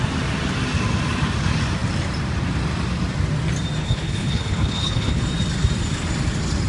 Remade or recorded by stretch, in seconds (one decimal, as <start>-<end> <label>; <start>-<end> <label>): 0.0-3.8 recorded; 3.8-5.2 remade; 5.2-6.7 recorded